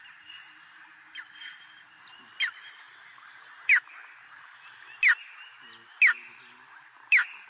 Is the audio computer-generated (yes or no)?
no